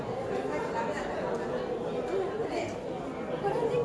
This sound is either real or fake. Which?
real